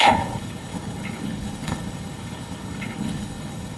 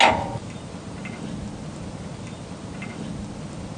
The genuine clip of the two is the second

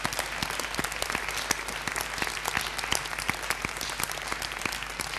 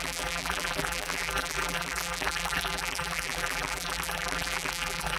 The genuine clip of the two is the first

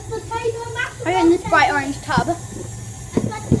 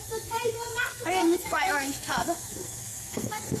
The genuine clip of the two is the first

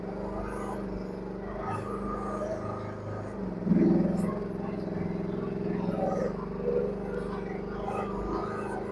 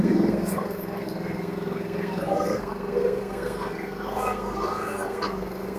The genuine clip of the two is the first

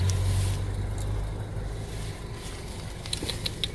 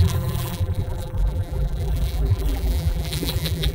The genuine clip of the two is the first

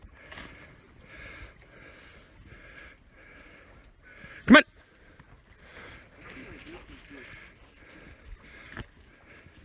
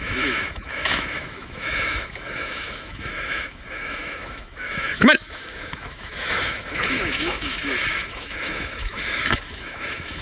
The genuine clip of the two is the first